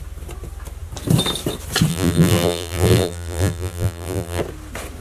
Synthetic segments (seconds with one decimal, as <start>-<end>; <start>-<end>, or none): 1.9-4.4